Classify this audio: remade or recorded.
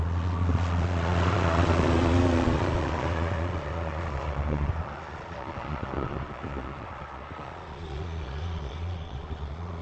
remade